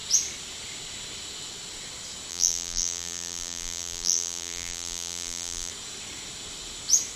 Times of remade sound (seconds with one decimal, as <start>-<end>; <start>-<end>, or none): 2.3-5.7